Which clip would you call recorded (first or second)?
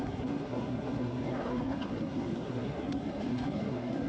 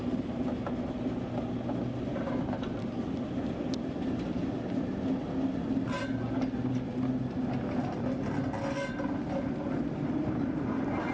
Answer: second